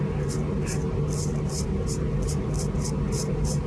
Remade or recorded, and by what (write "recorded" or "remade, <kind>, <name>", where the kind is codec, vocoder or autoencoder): recorded